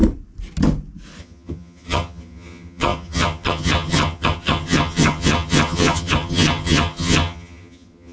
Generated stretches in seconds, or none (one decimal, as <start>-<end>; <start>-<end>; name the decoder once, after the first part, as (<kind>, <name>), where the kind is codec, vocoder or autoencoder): 1.2-8.1 (vocoder, HiFi-GAN)

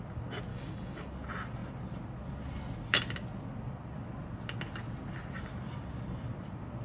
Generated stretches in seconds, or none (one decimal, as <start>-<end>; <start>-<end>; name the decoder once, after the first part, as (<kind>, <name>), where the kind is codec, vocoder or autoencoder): 0.5-1.1 (codec, DAC)

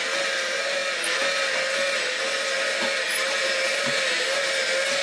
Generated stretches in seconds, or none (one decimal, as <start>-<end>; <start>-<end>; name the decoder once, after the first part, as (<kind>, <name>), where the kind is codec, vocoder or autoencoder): 3.4-4.4 (vocoder, BigVGAN v2)

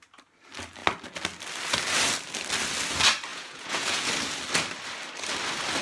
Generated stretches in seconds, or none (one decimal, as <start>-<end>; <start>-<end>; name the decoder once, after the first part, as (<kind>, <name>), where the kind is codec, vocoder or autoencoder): 3.3-4.1 (vocoder, Vocos)

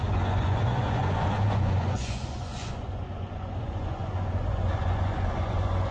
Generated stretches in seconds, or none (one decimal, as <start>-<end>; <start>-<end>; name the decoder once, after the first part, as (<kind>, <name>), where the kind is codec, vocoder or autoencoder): 0.0-5.9 (vocoder, Vocos)

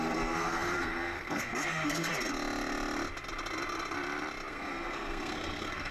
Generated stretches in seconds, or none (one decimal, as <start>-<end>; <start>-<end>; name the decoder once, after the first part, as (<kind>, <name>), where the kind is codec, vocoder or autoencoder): 0.0-2.1 (codec, SNAC); 4.5-5.9